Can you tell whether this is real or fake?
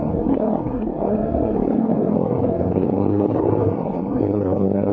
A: fake